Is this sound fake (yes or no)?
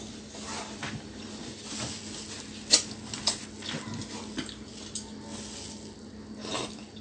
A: no